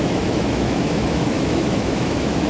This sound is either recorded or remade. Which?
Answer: remade